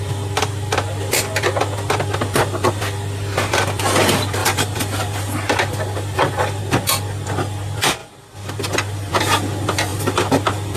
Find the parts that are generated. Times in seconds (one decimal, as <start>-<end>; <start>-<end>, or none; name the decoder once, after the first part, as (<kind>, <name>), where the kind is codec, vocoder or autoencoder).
4.4-6.6 (vocoder, BigVGAN v2); 8.0-9.1; 9.9-10.8